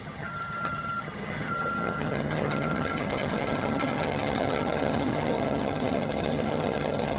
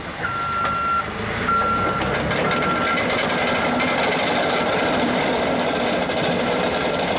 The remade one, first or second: first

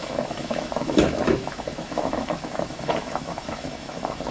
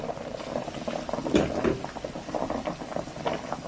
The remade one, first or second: first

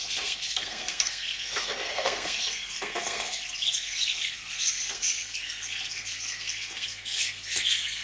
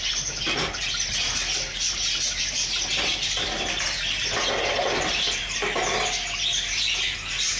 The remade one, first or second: first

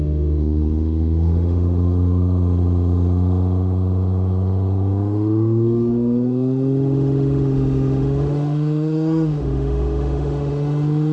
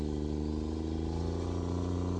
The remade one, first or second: first